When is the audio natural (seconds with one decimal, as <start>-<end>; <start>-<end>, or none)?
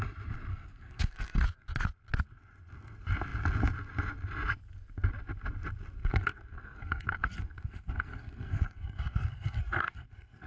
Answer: 0.0-0.5; 1.4-6.0